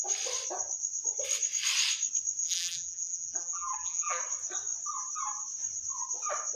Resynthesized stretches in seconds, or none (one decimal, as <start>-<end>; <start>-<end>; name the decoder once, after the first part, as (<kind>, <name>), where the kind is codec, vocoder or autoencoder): 2.4-4.2 (vocoder, BigVGAN v2)

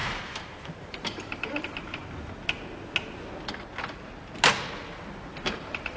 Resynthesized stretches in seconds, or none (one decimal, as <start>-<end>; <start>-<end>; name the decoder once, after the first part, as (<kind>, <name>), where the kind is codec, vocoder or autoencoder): 0.0-2.0 (vocoder, BigVGAN v2); 5.2-6.0

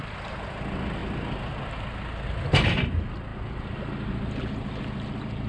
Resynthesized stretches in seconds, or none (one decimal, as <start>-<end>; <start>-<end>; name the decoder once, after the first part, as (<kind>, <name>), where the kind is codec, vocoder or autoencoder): none

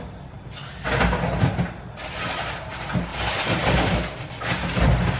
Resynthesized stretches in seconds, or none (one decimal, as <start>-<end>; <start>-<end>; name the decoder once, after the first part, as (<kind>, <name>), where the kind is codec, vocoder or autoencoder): 3.1-4.3 (vocoder, BigVGAN v2)